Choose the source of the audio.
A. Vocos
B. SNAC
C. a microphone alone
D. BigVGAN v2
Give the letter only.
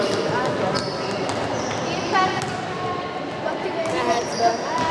C